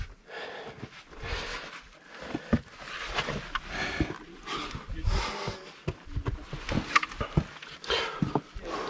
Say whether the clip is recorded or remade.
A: recorded